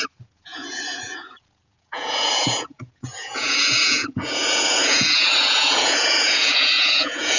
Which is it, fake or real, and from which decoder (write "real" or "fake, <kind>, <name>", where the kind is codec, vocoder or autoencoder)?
fake, vocoder, Vocos